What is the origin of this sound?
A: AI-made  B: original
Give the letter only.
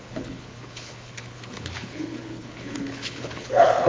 A